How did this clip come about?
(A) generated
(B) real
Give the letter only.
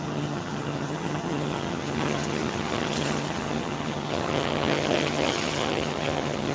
A